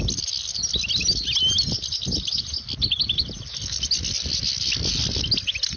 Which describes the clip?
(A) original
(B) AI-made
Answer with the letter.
A